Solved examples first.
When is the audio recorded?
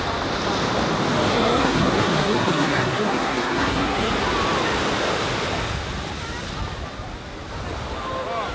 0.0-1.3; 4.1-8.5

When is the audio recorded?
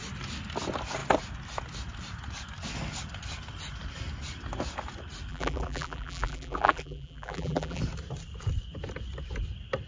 0.0-5.3; 7.8-9.9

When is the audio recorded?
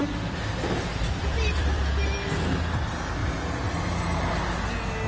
1.8-5.1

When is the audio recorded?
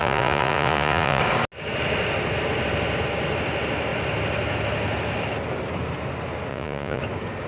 1.2-6.5; 7.0-7.5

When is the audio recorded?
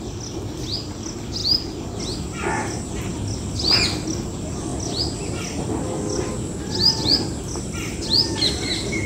0.0-9.1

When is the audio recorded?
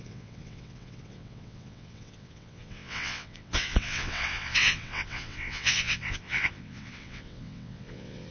none